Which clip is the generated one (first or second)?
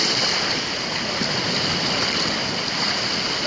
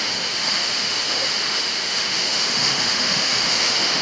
second